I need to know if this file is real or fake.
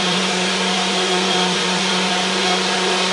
fake